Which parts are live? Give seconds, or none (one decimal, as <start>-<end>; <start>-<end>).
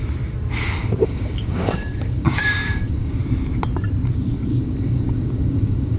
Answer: 0.0-1.0; 3.2-4.1